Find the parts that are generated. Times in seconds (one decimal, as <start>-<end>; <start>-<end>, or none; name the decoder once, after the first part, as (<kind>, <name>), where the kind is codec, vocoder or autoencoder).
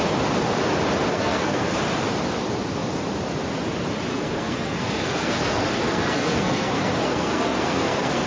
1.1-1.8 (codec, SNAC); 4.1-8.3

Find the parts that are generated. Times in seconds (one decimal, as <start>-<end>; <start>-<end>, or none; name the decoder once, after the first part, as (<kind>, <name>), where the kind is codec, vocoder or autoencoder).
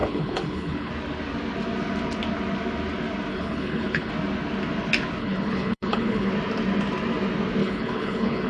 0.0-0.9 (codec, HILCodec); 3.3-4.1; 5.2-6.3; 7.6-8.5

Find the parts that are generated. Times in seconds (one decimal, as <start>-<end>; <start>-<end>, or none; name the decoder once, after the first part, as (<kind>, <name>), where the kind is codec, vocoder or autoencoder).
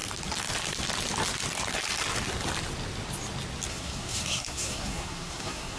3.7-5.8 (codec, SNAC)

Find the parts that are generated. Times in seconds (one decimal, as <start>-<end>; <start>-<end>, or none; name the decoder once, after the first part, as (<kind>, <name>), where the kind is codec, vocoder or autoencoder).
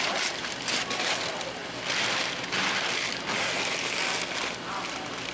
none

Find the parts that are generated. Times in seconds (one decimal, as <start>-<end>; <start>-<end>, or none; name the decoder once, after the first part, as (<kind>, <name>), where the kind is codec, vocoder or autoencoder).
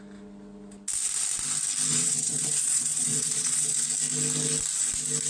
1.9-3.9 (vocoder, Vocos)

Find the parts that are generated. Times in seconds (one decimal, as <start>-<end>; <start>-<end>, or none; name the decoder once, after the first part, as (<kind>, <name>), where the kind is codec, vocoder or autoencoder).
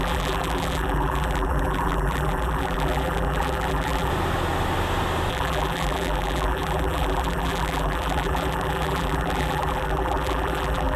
0.0-4.1 (vocoder, BigVGAN v2); 5.3-11.0